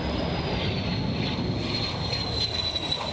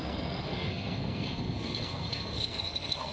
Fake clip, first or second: second